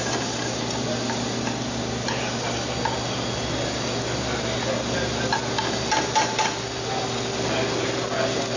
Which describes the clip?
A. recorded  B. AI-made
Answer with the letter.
A